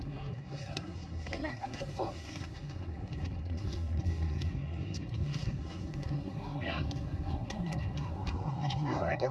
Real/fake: fake